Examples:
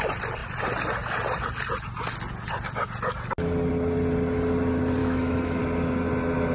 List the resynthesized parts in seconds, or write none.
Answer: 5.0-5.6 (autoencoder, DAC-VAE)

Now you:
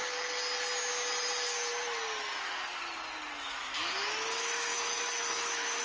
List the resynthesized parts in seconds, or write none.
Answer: 3.4-5.8 (autoencoder, DAC-VAE)

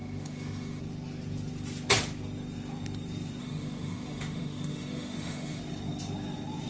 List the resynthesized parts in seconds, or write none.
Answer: 0.0-0.8 (autoencoder, DAC-VAE); 3.4-5.6

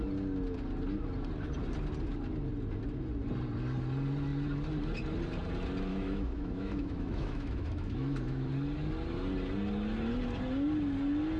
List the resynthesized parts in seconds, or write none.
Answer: 5.9-8.5 (autoencoder, DAC-VAE)

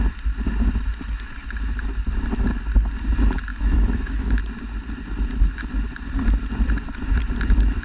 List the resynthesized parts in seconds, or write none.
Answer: 3.5-4.4 (autoencoder, DAC-VAE)

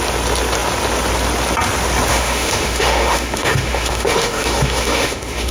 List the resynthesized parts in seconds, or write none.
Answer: 2.1-5.5 (autoencoder, DAC-VAE)